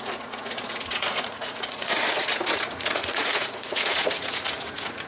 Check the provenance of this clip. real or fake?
fake